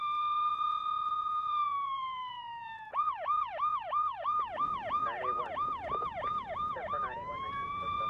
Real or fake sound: fake